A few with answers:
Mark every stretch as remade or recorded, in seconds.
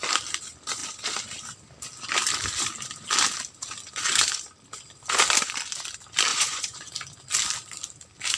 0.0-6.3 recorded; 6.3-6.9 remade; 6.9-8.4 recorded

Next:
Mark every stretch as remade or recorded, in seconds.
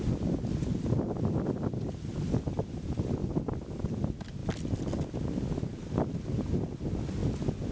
0.0-7.7 recorded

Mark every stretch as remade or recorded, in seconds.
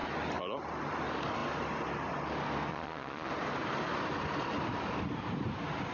0.0-2.7 recorded; 2.7-3.3 remade; 3.3-5.9 recorded